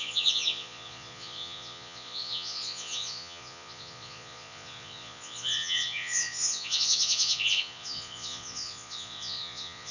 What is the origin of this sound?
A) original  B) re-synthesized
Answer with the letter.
B